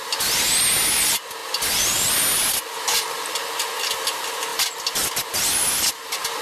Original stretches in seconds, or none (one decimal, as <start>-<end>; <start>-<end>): 0.0-6.4